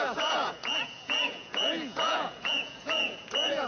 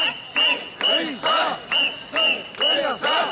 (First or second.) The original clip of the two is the second